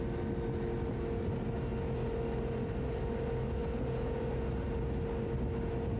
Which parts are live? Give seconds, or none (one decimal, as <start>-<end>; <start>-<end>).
0.0-6.0